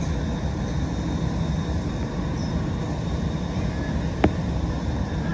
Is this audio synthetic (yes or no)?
no